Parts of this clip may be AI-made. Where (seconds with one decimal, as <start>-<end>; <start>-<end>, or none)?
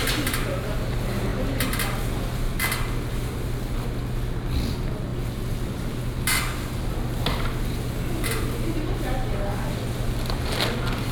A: none